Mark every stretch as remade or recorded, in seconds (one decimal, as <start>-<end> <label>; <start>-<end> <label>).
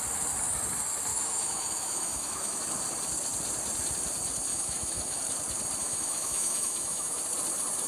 0.0-1.1 recorded; 1.1-2.6 remade; 2.6-4.5 recorded; 4.5-5.2 remade; 5.2-5.8 recorded; 5.8-7.2 remade; 7.2-7.9 recorded